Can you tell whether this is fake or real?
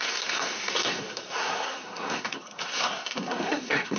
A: fake